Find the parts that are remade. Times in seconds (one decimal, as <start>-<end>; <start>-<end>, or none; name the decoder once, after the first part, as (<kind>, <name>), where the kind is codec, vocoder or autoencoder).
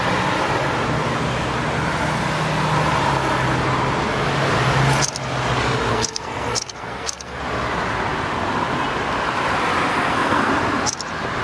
5.9-7.4 (codec, SNAC); 9.9-10.5